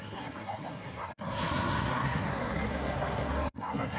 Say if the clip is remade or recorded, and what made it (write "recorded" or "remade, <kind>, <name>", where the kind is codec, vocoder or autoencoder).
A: remade, codec, SNAC